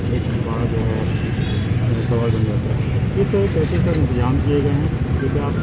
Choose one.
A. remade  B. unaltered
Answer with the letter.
B